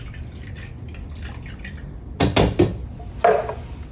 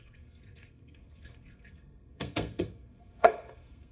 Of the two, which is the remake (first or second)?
second